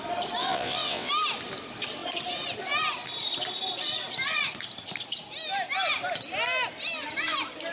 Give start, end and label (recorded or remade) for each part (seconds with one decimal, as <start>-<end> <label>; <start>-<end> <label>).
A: 0.0-0.4 recorded; 0.4-1.1 remade; 1.1-7.7 recorded